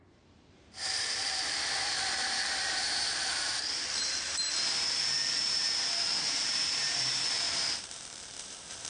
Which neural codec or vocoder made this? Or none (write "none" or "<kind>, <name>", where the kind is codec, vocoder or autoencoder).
vocoder, BigVGAN v2